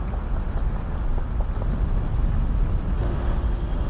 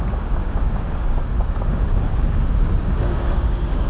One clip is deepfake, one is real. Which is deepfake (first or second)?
second